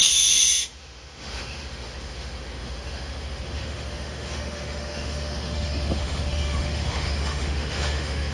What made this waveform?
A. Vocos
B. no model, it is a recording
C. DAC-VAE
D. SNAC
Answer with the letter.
C